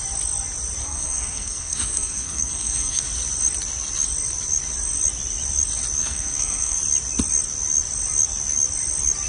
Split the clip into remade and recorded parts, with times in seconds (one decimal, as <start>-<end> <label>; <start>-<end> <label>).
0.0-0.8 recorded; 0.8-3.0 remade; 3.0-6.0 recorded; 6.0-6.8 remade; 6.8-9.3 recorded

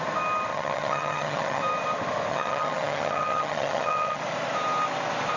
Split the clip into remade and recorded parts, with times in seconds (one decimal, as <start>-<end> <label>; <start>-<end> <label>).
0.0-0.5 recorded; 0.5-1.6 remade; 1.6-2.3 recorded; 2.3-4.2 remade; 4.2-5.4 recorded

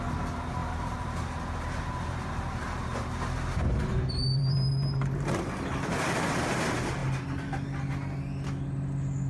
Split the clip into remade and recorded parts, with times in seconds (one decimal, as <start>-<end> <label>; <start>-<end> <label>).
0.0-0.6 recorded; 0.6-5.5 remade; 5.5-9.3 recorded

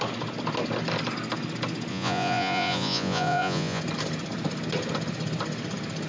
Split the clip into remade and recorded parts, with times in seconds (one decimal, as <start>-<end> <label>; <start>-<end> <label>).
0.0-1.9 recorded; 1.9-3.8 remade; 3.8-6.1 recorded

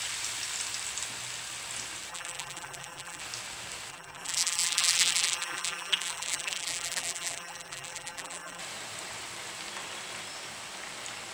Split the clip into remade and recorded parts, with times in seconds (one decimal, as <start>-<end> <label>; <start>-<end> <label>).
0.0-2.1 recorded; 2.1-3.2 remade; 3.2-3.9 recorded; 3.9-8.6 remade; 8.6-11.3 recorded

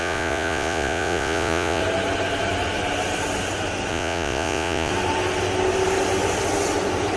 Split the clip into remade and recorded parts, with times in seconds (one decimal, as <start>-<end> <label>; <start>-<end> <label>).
0.0-1.8 remade; 1.8-3.9 recorded; 3.9-4.9 remade; 4.9-7.2 recorded